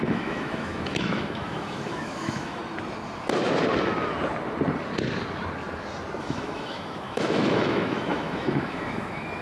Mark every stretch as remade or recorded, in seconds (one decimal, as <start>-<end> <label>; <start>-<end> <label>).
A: 0.0-2.6 remade; 2.6-6.2 recorded; 6.2-9.4 remade